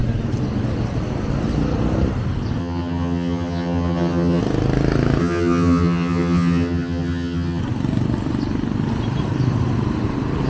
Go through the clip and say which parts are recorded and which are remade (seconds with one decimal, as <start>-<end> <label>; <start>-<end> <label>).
0.0-2.6 recorded; 2.6-4.4 remade; 4.4-5.2 recorded; 5.2-7.6 remade; 7.6-10.5 recorded